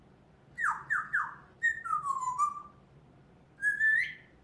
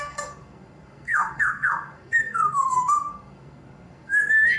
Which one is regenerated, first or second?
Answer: second